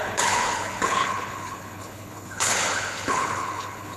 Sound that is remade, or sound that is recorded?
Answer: remade